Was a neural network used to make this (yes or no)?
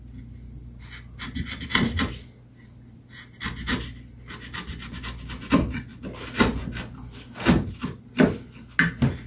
no